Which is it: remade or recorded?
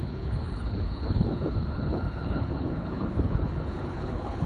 remade